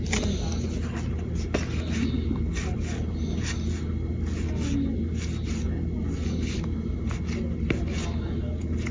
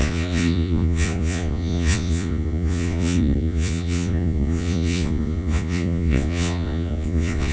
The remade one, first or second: second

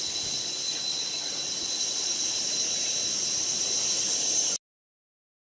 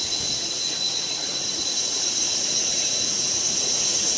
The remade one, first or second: second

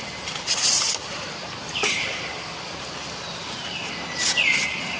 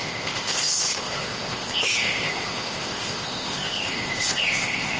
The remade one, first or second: second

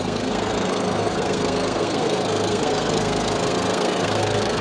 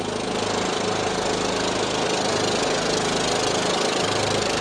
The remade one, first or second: first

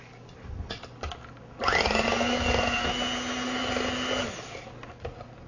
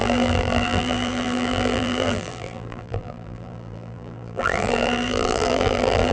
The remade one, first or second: second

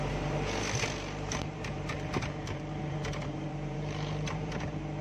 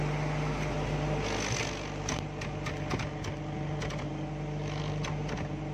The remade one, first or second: first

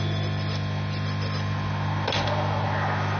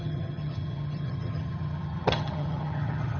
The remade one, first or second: second